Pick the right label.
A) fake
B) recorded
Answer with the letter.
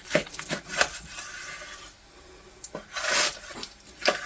B